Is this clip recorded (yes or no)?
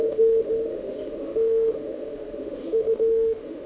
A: no